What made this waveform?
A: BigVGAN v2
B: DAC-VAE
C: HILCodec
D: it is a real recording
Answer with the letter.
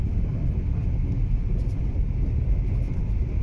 D